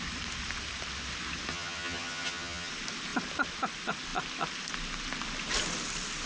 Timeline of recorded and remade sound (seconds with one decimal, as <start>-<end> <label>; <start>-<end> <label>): 0.0-1.5 recorded; 1.5-2.7 remade; 2.7-6.3 recorded